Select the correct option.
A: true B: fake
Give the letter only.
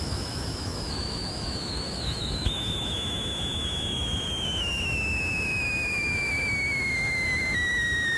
B